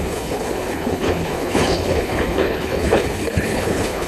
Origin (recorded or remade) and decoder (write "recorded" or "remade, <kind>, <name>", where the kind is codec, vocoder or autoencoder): remade, codec, HILCodec